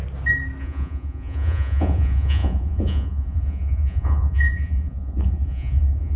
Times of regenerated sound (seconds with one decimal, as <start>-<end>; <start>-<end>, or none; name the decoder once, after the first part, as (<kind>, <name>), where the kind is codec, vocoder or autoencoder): 0.6-6.2 (vocoder, Vocos)